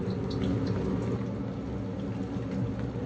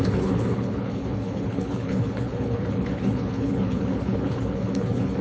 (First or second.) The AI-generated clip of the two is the second